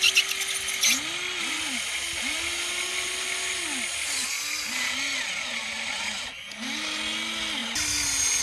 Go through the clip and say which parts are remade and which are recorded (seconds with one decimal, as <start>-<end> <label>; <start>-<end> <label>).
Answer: 0.0-8.4 recorded